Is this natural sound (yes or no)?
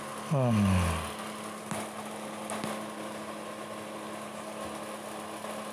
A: yes